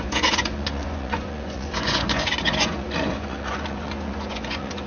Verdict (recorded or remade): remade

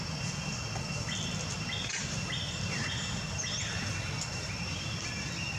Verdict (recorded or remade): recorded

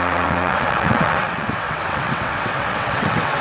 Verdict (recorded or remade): remade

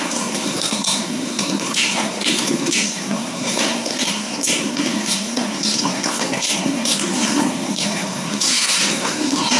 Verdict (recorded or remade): remade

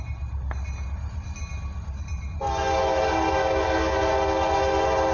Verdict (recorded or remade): recorded